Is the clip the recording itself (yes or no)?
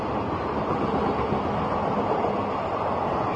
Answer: yes